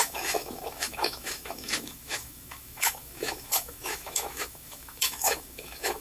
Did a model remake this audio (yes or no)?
yes